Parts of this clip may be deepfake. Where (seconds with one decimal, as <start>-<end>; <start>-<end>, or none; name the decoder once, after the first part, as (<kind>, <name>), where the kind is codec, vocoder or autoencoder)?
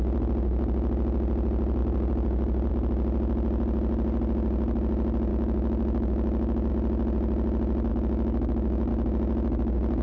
5.3-6.7 (autoencoder, DAC-VAE); 7.9-8.9